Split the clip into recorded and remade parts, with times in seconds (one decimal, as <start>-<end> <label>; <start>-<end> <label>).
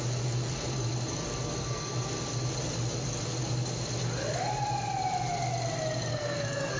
0.0-1.6 recorded; 1.6-2.1 remade; 2.1-6.1 recorded; 6.1-6.8 remade